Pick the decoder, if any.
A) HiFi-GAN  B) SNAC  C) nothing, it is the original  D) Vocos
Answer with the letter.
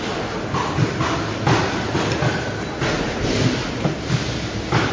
C